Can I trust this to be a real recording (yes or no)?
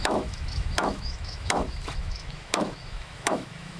no